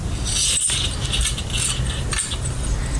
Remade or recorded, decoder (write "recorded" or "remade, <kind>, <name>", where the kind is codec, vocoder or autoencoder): recorded